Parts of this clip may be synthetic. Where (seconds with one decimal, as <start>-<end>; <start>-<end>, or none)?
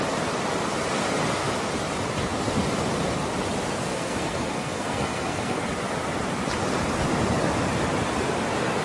3.9-5.6